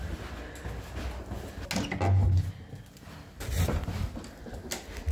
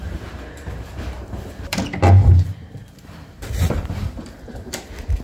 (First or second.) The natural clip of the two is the first